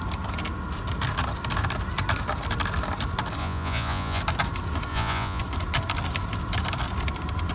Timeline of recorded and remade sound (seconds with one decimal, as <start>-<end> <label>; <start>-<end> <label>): 0.0-3.4 recorded; 3.4-4.2 remade; 4.2-4.9 recorded; 4.9-5.4 remade; 5.4-7.5 recorded